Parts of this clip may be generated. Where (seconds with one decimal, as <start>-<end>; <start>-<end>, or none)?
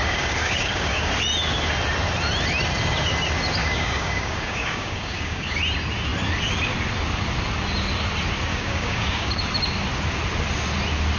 0.0-1.1; 3.6-5.6; 8.5-9.4